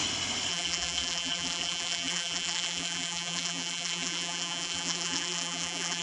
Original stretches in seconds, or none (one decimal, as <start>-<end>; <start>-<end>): 0.0-0.5